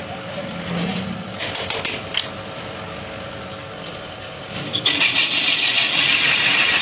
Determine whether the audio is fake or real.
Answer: real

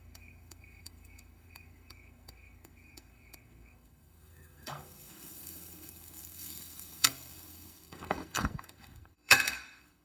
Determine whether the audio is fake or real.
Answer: fake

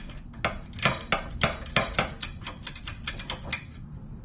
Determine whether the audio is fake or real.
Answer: real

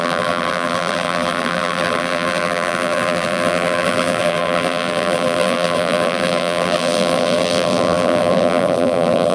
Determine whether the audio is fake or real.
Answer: fake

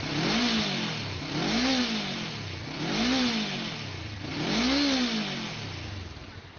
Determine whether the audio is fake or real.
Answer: real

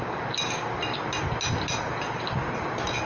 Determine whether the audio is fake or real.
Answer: real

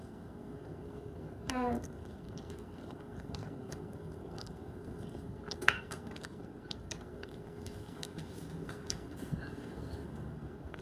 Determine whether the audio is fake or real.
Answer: fake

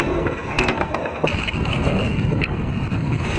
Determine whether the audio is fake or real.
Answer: fake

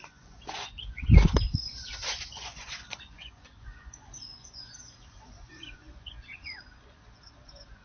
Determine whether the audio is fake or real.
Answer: fake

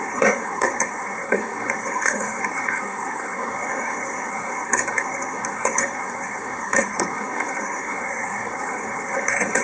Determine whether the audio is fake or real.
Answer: fake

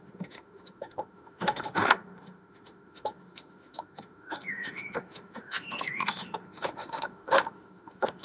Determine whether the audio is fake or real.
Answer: fake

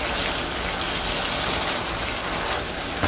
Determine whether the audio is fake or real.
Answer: real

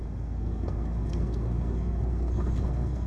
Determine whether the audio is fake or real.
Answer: fake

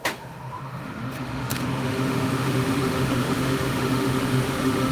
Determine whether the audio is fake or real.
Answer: fake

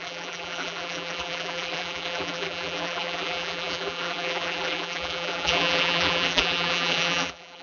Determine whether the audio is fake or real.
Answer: fake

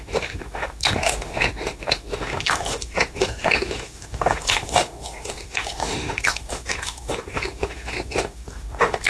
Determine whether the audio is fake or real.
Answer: fake